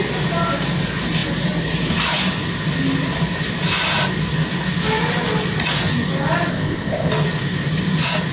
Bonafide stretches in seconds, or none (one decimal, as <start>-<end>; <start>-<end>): 0.0-6.5; 7.1-8.3